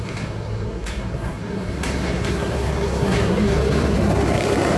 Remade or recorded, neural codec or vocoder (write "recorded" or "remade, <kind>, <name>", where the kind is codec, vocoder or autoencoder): remade, codec, SNAC